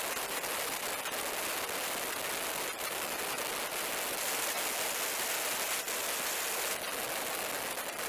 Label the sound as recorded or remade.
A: recorded